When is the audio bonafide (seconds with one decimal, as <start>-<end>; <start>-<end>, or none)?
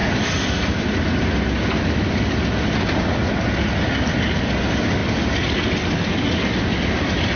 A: 0.0-7.4